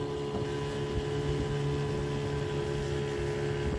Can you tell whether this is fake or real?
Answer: real